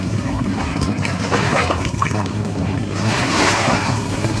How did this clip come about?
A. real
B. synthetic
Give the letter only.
B